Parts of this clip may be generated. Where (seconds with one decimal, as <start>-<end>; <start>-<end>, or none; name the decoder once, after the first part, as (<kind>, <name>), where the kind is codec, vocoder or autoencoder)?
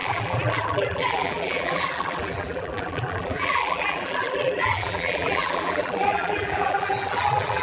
0.0-7.6 (vocoder, BigVGAN v2)